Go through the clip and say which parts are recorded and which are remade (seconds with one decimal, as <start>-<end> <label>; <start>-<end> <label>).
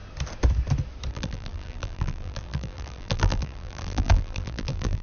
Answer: 0.0-1.1 recorded; 1.1-5.0 remade